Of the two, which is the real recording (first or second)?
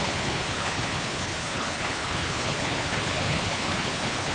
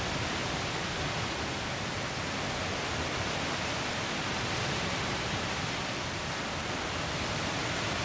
second